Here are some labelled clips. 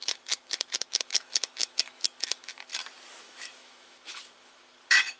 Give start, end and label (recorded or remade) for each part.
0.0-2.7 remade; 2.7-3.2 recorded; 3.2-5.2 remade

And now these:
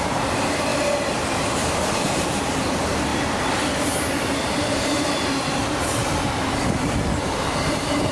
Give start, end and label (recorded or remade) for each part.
0.0-0.7 remade; 0.7-1.4 recorded; 1.4-3.1 remade; 3.1-4.1 recorded; 4.1-6.0 remade; 6.0-6.8 recorded; 6.8-8.1 remade

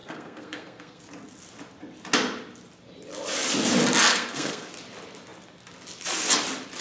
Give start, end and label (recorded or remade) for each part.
0.0-1.0 remade; 1.0-4.1 recorded; 4.1-4.7 remade; 4.7-6.8 recorded